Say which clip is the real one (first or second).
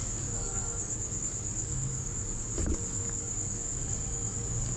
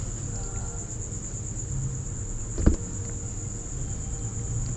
second